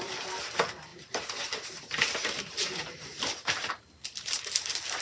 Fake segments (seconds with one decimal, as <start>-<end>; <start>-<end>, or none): 0.0-5.0